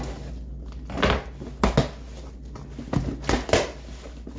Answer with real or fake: real